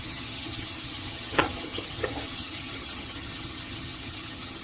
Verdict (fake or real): fake